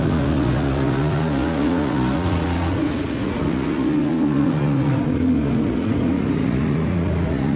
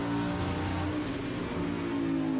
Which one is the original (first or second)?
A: second